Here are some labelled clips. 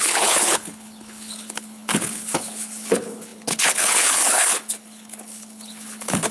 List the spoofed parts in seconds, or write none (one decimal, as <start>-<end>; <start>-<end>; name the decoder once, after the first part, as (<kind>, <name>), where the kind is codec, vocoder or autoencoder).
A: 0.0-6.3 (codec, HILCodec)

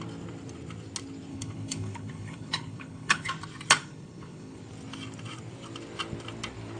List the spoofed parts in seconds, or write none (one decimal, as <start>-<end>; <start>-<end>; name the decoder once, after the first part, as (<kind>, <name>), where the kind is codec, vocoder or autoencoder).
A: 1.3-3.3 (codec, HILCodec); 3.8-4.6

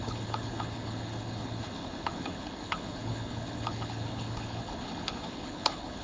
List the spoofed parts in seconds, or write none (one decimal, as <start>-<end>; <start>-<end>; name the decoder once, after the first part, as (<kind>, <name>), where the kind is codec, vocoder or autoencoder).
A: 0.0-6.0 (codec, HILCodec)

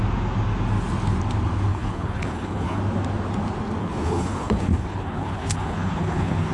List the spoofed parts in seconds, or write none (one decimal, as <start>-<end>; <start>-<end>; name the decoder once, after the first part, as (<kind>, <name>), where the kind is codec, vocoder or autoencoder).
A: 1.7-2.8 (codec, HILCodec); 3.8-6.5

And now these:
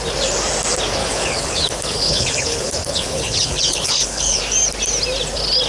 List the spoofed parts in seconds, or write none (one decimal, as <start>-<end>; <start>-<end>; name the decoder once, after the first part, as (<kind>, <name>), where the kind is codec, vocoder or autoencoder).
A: 1.0-4.4 (codec, HILCodec)

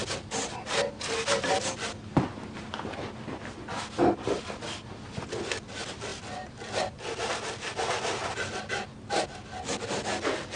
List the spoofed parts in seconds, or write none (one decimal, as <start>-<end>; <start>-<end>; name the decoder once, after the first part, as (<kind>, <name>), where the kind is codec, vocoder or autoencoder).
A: none

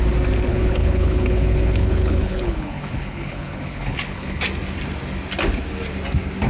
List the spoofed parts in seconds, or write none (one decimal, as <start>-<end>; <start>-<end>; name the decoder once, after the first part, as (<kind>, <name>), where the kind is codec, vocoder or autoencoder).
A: 0.5-4.4 (codec, HILCodec)

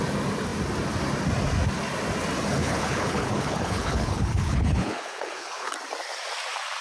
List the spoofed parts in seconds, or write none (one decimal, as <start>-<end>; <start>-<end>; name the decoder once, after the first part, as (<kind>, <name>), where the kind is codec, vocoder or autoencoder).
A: 2.6-5.7 (codec, HILCodec)